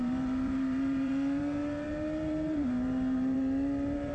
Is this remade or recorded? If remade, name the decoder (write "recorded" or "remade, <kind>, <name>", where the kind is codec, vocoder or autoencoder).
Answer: remade, vocoder, BigVGAN v2